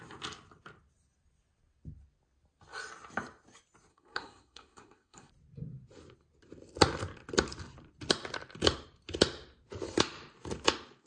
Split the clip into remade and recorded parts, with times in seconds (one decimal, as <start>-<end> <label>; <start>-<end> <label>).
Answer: 0.0-3.9 recorded; 3.9-5.3 remade; 5.3-11.1 recorded